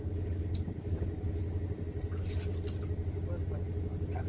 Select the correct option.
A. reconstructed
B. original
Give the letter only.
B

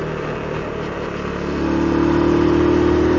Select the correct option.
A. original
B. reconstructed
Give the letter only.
A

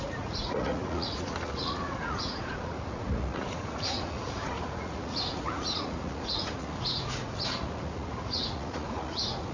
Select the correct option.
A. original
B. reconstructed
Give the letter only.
B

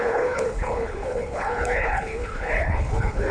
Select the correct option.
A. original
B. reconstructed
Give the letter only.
B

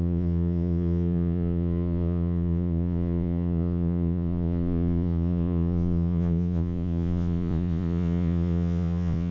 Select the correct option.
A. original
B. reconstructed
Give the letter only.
B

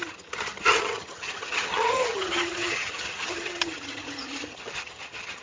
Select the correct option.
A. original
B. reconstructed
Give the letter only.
B